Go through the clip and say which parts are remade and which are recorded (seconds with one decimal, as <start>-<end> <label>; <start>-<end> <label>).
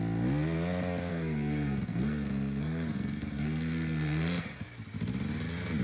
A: 0.0-1.1 recorded; 1.1-4.6 remade; 4.6-5.8 recorded